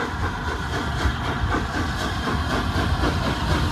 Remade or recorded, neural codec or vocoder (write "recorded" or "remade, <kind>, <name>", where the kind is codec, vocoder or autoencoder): recorded